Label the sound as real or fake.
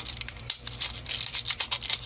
fake